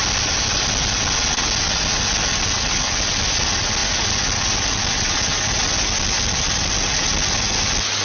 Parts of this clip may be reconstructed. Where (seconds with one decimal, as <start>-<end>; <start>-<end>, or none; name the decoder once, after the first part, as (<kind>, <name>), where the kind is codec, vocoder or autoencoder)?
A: none